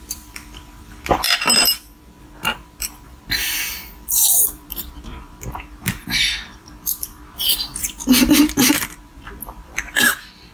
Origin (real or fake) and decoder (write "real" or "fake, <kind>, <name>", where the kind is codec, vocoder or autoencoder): fake, vocoder, BigVGAN v2